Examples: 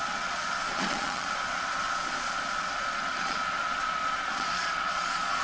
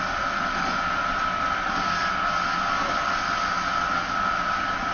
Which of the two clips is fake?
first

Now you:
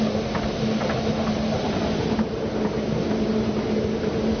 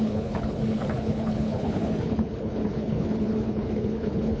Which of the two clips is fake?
second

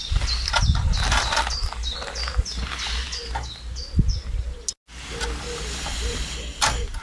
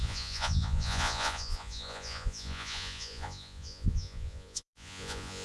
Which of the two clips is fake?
second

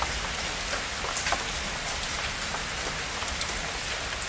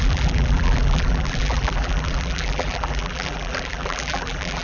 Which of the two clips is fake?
second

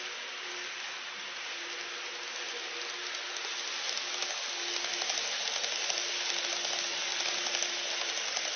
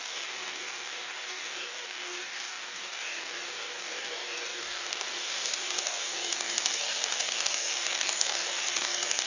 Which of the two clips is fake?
second